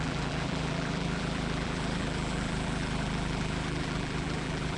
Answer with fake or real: fake